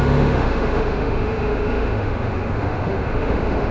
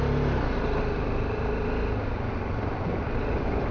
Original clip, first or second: second